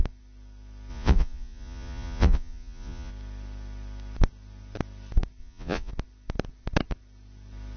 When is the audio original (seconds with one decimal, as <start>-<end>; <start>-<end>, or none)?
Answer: 0.0-0.9; 3.1-5.4; 5.9-7.8